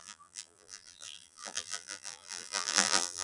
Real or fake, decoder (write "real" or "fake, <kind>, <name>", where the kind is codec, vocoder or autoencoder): fake, vocoder, BigVGAN v2